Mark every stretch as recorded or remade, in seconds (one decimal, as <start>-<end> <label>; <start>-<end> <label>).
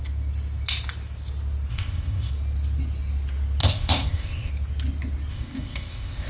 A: 0.0-1.7 recorded; 1.7-2.3 remade; 2.3-3.6 recorded; 3.6-4.5 remade; 4.5-5.3 recorded; 5.3-6.3 remade